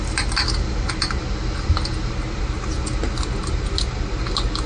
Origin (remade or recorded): recorded